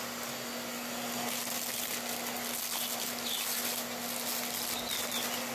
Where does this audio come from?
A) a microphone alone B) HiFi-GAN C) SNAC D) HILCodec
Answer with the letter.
A